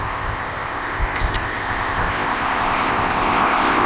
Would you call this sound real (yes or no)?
no